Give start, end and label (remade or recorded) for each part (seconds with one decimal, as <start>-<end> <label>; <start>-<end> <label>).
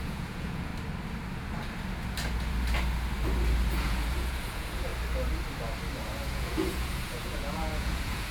0.0-0.7 remade; 0.7-3.7 recorded; 3.7-4.9 remade; 4.9-6.3 recorded; 6.3-8.3 remade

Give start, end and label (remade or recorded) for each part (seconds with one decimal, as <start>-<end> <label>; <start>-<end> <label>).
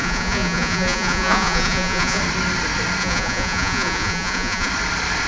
0.0-2.2 remade; 2.2-3.0 recorded; 3.0-4.7 remade; 4.7-5.3 recorded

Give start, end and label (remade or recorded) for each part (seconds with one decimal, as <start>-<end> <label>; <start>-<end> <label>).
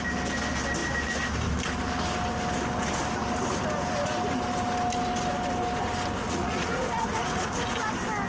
0.0-6.2 recorded; 6.2-7.9 remade; 7.9-8.3 recorded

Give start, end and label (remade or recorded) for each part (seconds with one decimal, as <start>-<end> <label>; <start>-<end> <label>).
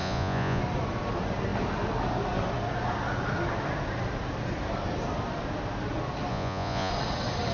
0.0-0.6 remade; 0.6-6.3 recorded; 6.3-6.9 remade; 6.9-7.5 recorded